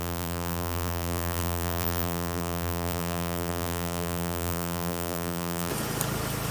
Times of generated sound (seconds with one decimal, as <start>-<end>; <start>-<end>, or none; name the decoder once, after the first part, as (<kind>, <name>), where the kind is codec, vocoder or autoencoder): 0.0-5.7 (vocoder, BigVGAN v2)